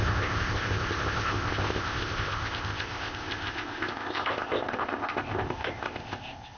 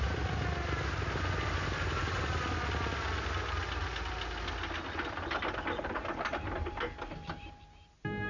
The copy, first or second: first